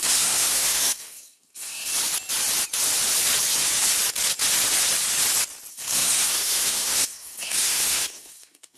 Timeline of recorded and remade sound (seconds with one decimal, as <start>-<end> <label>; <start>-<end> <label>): 0.0-1.9 remade; 1.9-5.7 recorded; 5.7-8.8 remade